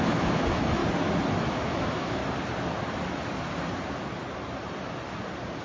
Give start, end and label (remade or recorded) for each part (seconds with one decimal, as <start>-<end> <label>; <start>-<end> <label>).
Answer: 0.0-0.8 remade; 0.8-1.4 recorded; 1.4-2.2 remade; 2.2-5.6 recorded